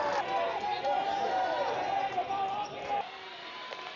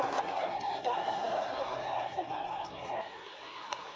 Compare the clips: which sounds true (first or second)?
first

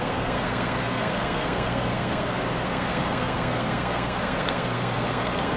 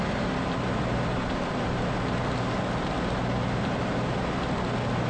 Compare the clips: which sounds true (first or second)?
second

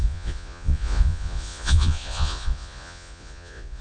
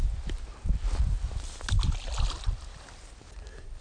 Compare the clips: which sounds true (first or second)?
second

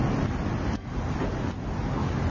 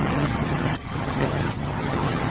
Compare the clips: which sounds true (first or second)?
first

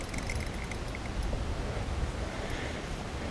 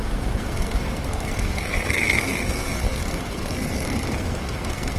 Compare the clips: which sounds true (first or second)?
first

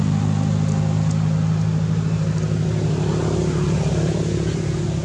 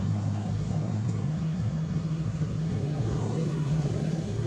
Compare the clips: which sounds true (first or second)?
first